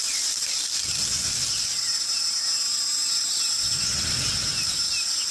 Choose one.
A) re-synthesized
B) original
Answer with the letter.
B